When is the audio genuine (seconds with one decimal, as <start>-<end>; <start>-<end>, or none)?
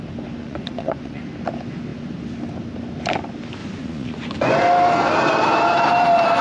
0.0-0.4; 1.2-3.6; 4.6-6.4